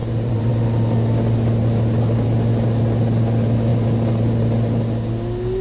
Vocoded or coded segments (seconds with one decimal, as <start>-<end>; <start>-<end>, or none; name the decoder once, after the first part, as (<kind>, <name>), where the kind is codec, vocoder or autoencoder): 0.0-0.5 (vocoder, BigVGAN v2)